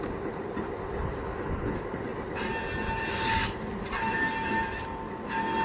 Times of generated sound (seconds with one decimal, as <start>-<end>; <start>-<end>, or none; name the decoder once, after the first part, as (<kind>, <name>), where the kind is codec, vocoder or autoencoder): none